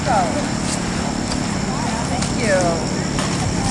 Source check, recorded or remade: recorded